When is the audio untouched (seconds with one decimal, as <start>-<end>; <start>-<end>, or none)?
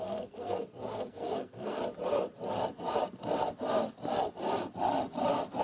1.8-5.6